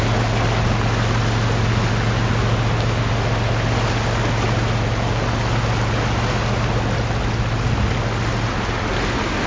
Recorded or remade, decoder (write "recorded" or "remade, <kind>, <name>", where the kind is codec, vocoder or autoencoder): recorded